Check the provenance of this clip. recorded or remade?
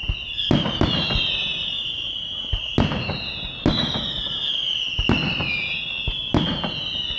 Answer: recorded